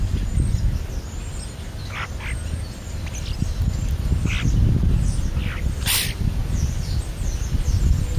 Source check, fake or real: real